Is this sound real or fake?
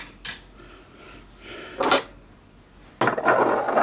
real